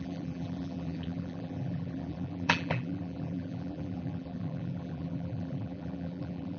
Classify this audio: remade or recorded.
remade